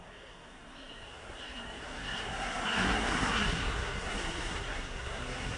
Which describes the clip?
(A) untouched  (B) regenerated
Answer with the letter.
B